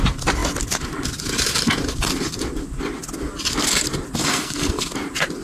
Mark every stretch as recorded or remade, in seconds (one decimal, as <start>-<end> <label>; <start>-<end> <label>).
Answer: 0.0-4.2 recorded; 4.2-4.9 remade; 4.9-5.4 recorded